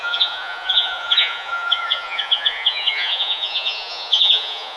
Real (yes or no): no